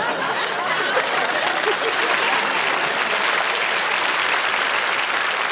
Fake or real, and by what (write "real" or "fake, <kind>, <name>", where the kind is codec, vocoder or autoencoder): real